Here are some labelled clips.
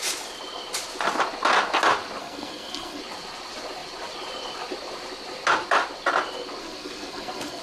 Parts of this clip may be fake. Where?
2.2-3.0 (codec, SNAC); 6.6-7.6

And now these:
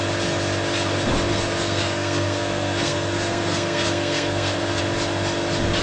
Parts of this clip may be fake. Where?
1.3-4.8 (codec, SNAC)

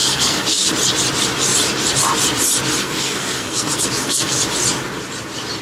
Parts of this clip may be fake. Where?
0.0-0.7 (codec, SNAC); 2.8-4.4

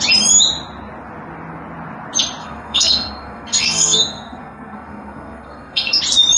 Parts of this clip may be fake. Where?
2.4-6.0 (codec, SNAC)

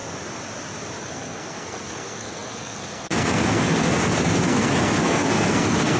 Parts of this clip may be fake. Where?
1.0-6.0 (codec, SNAC)

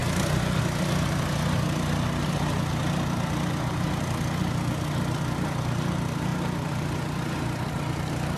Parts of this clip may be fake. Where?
none

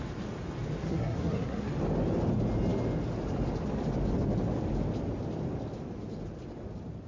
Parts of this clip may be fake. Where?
0.8-1.7 (codec, SNAC)